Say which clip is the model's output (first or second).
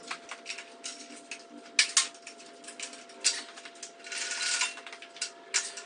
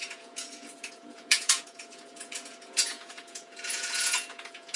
second